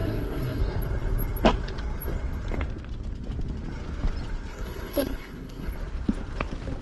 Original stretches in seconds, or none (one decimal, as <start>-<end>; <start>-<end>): 0.6-4.5; 5.7-6.8